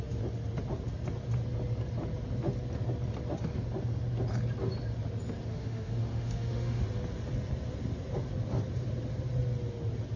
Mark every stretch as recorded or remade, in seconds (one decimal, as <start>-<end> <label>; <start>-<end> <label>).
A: 0.0-5.5 recorded; 5.5-6.8 remade; 6.8-10.2 recorded